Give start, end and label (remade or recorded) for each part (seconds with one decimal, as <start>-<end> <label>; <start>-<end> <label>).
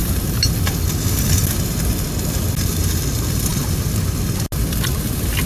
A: 0.0-5.5 recorded